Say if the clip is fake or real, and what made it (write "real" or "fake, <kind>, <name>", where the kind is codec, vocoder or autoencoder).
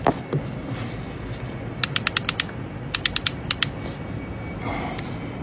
real